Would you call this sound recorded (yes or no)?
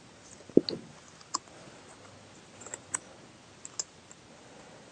yes